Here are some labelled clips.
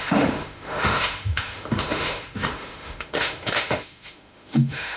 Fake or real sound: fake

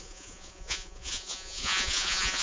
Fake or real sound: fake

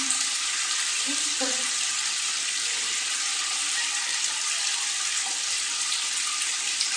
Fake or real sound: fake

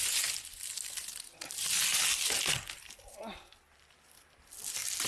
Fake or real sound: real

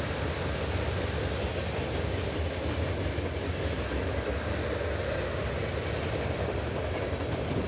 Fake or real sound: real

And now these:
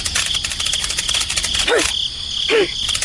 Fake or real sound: real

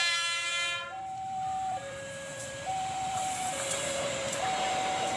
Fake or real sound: fake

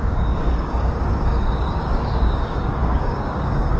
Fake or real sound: fake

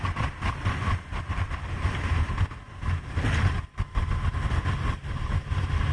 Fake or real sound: real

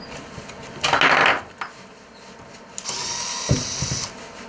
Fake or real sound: real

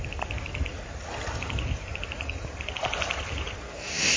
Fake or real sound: real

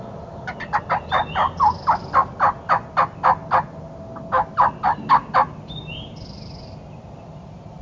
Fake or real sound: real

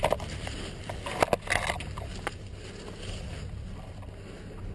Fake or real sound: real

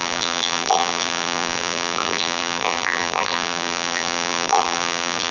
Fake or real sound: fake